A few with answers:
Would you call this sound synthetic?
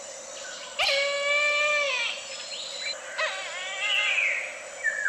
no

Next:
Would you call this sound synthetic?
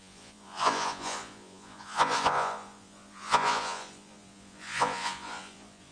yes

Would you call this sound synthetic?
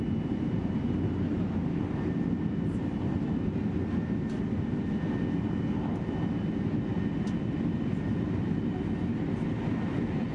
no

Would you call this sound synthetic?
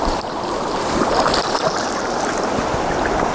yes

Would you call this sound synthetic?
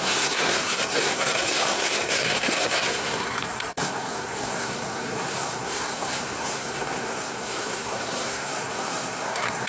yes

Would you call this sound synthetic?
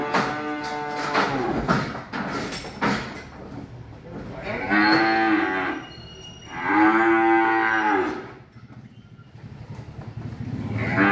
no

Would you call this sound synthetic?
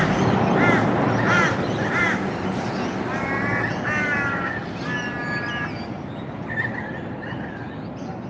no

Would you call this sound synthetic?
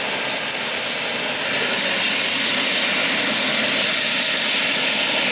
no